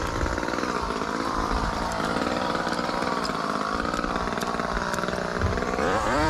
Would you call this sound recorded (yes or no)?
no